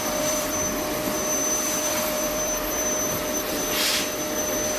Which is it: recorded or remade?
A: remade